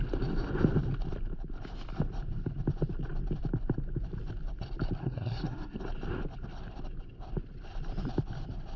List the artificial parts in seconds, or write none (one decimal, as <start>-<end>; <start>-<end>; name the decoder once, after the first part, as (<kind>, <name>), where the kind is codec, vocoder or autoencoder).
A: 5.0-5.8 (codec, SNAC)